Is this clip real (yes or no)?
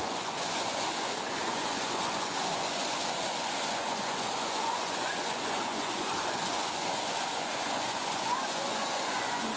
no